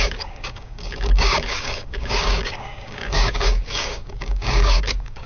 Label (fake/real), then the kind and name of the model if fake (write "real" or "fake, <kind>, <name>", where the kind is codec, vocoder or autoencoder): fake, codec, DAC